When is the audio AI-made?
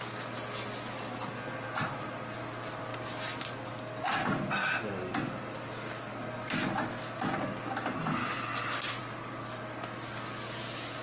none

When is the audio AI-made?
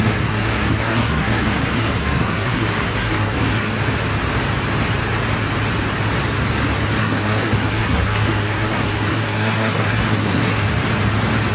0.0-3.7 (codec, SNAC); 7.0-10.7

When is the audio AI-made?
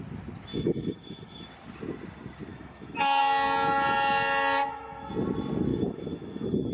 0.5-1.5 (autoencoder, DAC-VAE); 2.5-3.2; 4.6-5.1; 5.7-6.7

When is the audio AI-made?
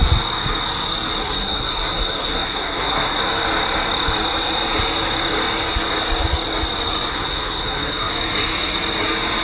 1.2-3.2 (codec, SNAC); 7.1-8.1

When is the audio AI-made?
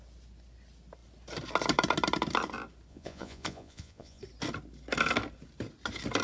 2.9-4.2 (vocoder, Vocos)